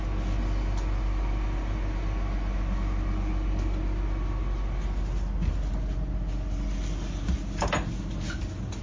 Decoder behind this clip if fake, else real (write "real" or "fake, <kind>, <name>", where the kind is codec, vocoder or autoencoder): real